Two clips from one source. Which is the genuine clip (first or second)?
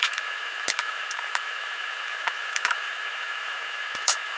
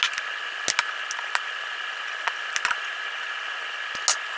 second